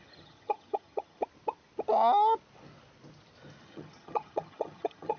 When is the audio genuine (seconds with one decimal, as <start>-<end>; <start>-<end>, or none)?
1.2-3.6

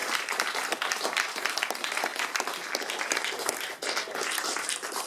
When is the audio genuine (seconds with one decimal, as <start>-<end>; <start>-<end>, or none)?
2.1-4.4

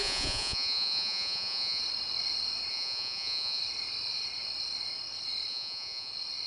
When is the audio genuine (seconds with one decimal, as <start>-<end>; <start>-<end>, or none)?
1.8-2.7; 3.6-5.5; 6.1-6.5